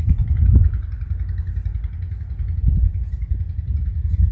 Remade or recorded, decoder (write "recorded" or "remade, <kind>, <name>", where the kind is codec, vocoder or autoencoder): recorded